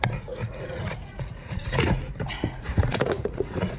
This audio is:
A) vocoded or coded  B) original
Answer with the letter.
A